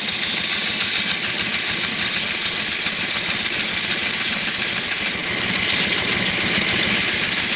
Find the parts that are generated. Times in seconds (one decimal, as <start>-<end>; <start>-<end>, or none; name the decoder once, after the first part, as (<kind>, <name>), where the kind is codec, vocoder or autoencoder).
none